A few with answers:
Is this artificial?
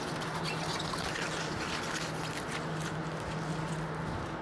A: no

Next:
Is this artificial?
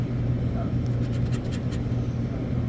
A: no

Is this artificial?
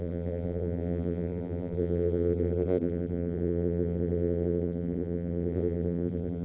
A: yes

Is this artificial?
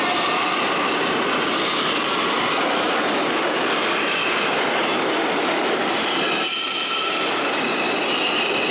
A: yes